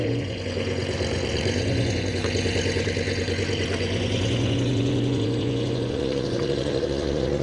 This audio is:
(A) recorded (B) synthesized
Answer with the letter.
B